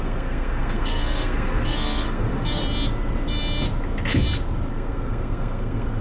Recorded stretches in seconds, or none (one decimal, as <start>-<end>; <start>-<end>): 2.6-4.7

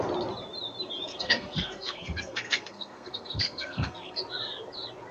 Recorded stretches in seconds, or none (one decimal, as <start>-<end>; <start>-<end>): 0.0-1.1; 4.2-5.1